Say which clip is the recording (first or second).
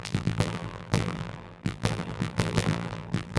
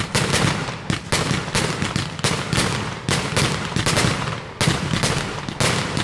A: second